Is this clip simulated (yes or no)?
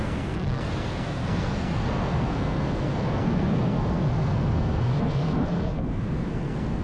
yes